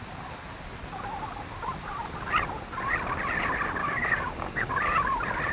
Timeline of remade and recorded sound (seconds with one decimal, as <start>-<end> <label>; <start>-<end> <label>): 0.0-3.8 recorded; 3.8-4.7 remade; 4.7-5.5 recorded